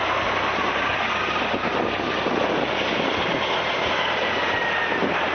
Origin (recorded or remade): recorded